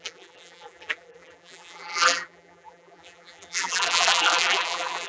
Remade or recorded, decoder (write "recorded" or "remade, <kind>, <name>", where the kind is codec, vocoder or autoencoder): remade, vocoder, BigVGAN v2